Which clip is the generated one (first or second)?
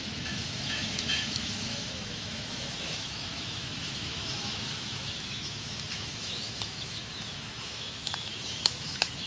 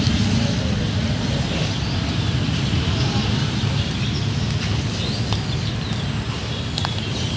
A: first